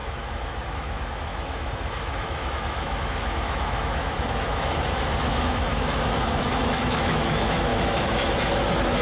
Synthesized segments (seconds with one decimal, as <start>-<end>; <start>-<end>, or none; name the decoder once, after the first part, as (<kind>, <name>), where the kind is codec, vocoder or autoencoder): 0.0-9.0 (autoencoder, DAC-VAE)